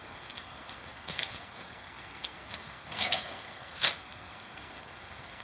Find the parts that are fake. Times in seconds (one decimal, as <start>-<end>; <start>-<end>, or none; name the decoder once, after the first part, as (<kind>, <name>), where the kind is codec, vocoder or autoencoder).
0.0-5.4 (codec, SNAC)